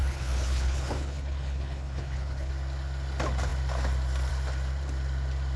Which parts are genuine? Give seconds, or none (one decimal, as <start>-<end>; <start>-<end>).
2.5-5.6